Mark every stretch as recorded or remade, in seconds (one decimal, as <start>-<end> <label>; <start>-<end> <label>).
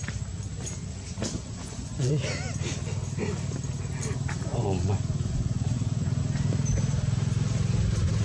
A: 0.0-1.4 recorded; 1.4-2.1 remade; 2.1-4.5 recorded; 4.5-6.2 remade; 6.2-8.2 recorded